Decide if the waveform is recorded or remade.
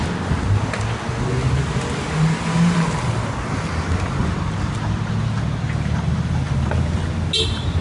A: recorded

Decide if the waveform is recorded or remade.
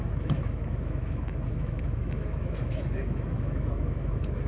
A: remade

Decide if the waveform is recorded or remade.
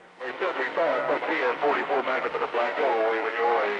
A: remade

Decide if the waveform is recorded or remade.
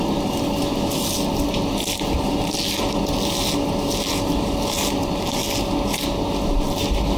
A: recorded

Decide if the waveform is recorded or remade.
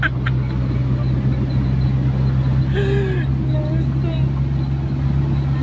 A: recorded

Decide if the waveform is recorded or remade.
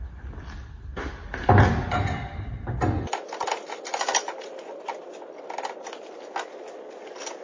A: recorded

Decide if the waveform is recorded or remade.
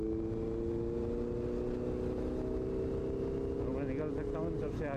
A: recorded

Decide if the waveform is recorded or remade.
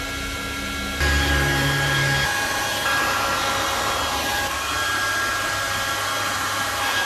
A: recorded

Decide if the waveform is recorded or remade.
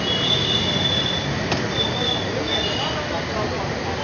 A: recorded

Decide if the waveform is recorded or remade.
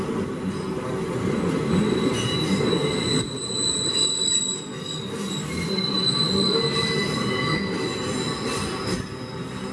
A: recorded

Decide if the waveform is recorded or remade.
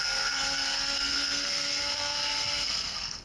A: remade